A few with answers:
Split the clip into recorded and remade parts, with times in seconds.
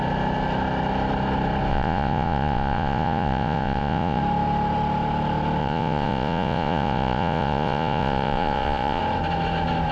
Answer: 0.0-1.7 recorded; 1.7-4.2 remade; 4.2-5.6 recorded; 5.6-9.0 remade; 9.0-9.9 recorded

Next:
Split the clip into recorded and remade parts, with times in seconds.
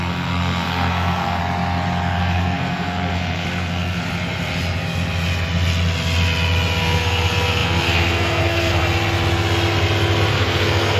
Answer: 0.0-1.4 remade; 1.4-2.2 recorded; 2.2-4.0 remade; 4.0-6.8 recorded; 6.8-8.8 remade; 8.8-10.3 recorded; 10.3-11.0 remade